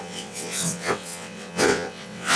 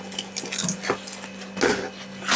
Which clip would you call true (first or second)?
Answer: second